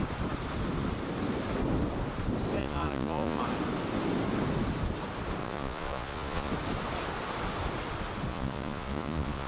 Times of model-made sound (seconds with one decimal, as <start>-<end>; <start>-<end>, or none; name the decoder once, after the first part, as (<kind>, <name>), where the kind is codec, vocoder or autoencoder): 2.6-3.4 (vocoder, Vocos); 5.4-6.5; 8.3-9.5